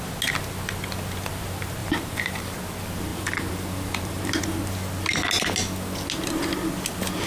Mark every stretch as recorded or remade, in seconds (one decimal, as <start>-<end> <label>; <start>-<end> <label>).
0.0-1.8 recorded; 1.8-2.4 remade; 2.4-3.1 recorded; 3.1-4.4 remade; 4.4-7.3 recorded